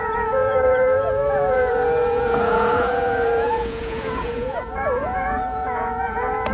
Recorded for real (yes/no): no